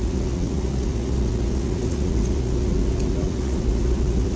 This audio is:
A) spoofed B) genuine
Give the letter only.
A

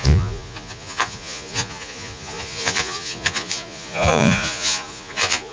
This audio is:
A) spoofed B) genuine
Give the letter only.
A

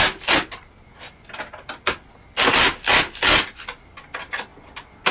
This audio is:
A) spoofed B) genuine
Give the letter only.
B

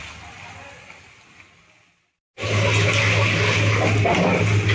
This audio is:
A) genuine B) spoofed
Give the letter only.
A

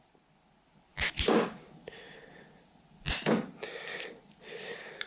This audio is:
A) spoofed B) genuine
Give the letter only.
B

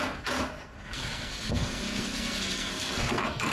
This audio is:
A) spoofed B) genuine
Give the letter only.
A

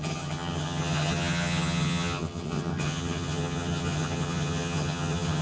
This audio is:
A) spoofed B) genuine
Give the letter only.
A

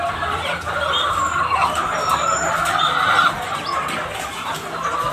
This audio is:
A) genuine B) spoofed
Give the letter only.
A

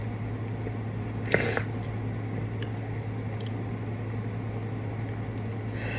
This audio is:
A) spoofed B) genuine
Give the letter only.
B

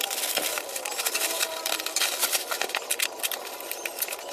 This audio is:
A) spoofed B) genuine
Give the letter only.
B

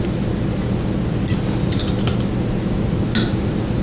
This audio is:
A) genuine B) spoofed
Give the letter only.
A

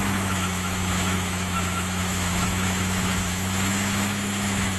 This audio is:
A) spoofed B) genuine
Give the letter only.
A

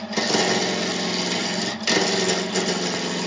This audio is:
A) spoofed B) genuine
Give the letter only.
B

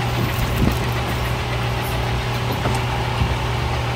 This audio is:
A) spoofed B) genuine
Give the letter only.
B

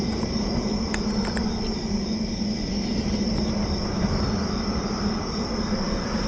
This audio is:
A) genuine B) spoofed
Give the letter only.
A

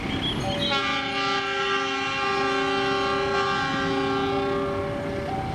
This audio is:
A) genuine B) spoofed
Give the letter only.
A